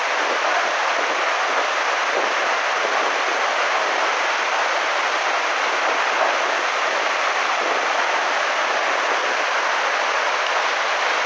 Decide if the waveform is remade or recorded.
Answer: recorded